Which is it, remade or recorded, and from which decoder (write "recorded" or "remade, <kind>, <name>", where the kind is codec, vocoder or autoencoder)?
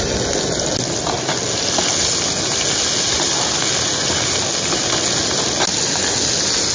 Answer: recorded